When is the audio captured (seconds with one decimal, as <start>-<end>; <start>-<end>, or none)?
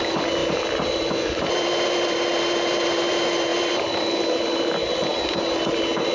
5.1-6.1